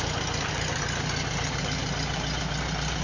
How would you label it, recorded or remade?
recorded